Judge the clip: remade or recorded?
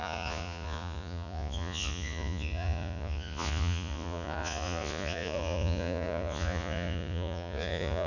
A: remade